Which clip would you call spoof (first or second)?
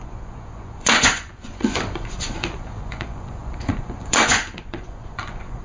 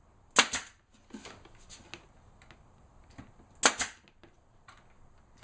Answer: first